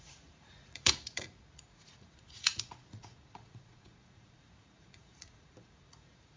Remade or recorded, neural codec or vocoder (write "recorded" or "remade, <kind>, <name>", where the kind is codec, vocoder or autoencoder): remade, vocoder, Vocos